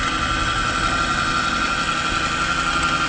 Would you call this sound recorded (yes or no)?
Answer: yes